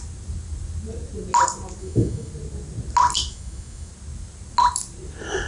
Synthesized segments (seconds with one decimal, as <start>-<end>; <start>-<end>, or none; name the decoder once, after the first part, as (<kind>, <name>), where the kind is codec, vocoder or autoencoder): 1.8-2.3 (autoencoder, DAC-VAE); 3.3-3.9